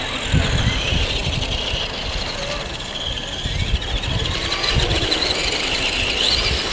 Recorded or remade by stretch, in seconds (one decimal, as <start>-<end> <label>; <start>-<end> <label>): 0.0-6.7 recorded